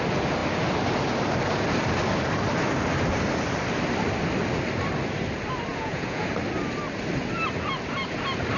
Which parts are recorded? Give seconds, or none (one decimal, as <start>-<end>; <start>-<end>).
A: 0.0-5.7; 6.3-8.6